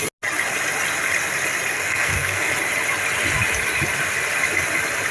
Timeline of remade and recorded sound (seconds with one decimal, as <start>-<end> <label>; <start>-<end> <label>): 0.0-1.7 recorded; 1.7-2.5 remade; 2.5-5.1 recorded